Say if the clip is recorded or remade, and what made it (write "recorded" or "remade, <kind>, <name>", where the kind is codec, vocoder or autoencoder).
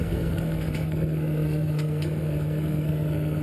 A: remade, codec, SNAC